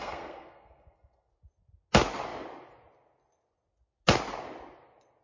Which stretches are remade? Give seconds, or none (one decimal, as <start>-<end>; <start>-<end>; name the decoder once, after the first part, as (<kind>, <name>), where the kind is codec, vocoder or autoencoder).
0.0-1.3 (codec, SNAC)